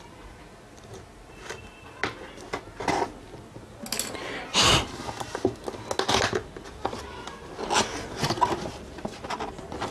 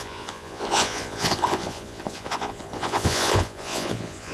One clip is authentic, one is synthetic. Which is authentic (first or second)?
first